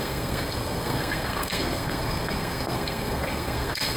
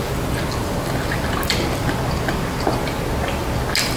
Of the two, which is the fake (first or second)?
first